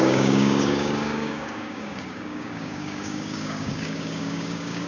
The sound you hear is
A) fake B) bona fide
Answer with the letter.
A